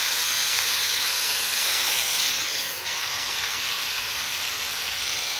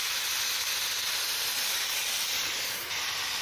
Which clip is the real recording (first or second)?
second